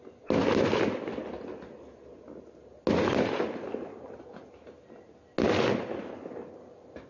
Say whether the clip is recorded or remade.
recorded